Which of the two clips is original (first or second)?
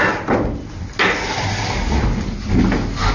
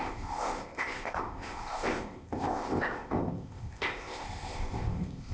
first